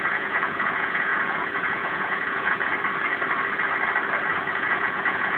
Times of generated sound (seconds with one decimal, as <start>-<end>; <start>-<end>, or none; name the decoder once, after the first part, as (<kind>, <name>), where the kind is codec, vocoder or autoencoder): 0.0-2.7 (vocoder, Vocos); 4.3-5.4